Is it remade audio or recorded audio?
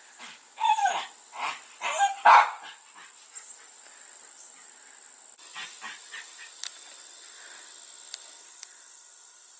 recorded